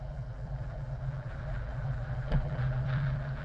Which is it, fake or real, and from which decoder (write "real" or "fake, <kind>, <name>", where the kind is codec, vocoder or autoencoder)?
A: fake, vocoder, BigVGAN v2